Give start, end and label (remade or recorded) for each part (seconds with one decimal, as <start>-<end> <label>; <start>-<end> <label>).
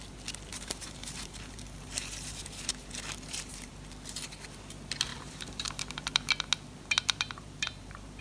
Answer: 0.0-0.5 recorded; 0.5-3.7 remade; 3.7-5.1 recorded; 5.1-6.3 remade; 6.3-7.0 recorded; 7.0-8.2 remade